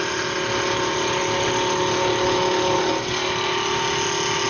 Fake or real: real